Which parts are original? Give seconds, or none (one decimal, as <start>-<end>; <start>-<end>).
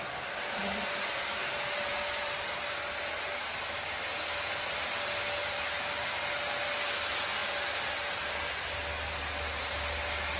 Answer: 0.0-10.4